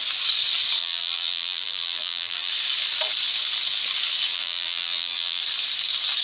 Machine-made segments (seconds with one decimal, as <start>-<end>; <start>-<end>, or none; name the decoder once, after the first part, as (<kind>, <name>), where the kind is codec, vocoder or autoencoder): 0.8-2.5 (vocoder, BigVGAN v2); 4.3-5.4

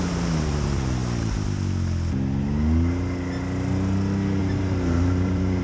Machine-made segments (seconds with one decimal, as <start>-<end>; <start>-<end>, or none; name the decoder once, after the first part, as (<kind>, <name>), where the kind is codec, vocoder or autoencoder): 0.0-1.0 (vocoder, BigVGAN v2); 4.4-5.6